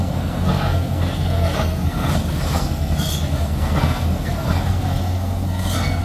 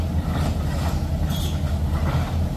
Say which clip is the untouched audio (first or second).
second